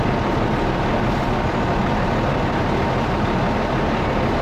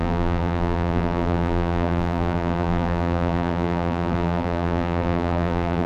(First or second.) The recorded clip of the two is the first